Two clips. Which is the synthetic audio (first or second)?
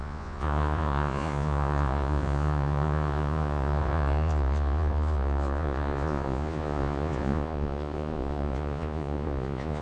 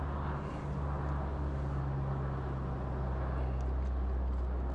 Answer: first